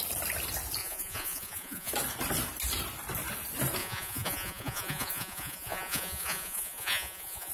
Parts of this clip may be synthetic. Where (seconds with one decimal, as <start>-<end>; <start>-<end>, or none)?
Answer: 0.8-1.9; 3.8-7.5